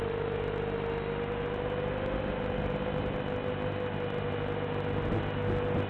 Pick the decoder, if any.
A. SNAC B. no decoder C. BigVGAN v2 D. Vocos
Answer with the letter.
B